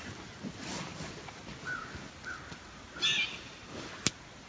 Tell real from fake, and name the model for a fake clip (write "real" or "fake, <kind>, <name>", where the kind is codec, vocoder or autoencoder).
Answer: real